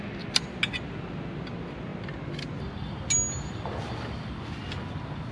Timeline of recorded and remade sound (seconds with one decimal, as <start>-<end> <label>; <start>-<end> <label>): 0.0-5.3 recorded